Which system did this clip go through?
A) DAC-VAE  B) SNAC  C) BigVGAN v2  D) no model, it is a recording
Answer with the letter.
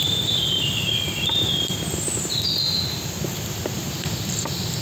D